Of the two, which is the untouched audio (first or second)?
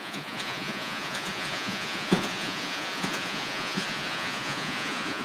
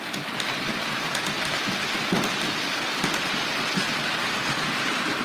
second